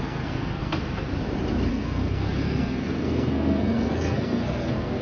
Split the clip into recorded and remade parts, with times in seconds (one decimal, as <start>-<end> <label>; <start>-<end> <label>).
0.0-1.1 remade; 1.1-1.7 recorded; 1.7-5.0 remade